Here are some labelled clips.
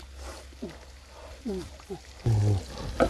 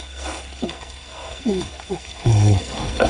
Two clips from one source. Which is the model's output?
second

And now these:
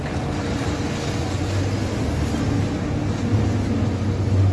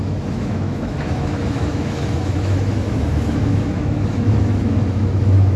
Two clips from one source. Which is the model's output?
second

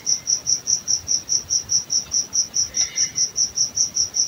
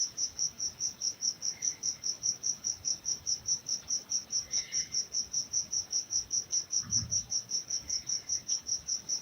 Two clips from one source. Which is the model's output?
second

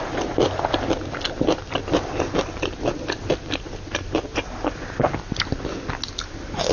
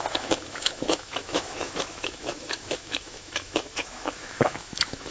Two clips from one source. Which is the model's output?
second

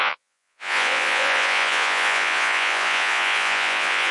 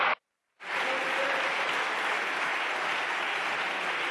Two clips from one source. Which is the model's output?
first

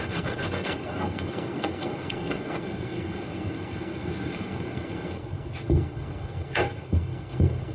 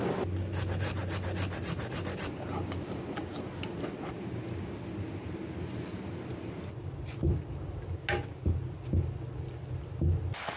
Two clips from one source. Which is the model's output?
first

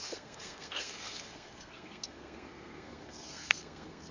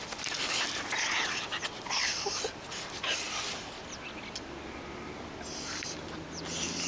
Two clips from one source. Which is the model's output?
first